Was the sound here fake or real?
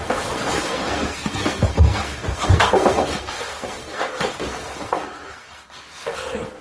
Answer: fake